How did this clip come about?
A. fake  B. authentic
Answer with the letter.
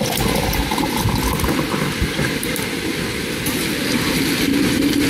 B